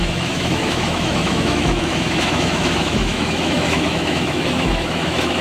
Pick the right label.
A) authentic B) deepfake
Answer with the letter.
B